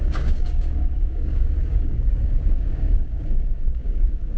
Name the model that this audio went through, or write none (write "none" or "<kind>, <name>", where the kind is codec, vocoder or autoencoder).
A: codec, DAC